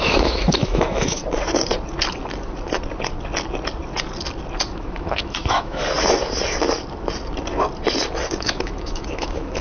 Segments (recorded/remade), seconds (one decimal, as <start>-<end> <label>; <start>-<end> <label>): 0.0-1.2 remade; 1.2-4.7 recorded; 4.7-5.8 remade; 5.8-8.4 recorded; 8.4-9.6 remade